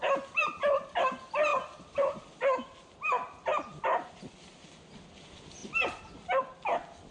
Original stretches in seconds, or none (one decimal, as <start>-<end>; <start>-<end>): 0.0-7.1